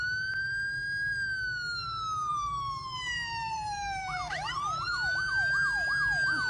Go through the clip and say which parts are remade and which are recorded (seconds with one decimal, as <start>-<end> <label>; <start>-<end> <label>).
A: 0.0-2.3 recorded; 2.3-5.3 remade; 5.3-6.5 recorded